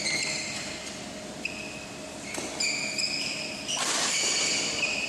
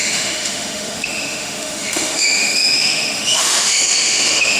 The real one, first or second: first